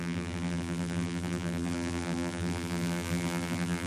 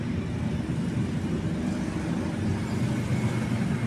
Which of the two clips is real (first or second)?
second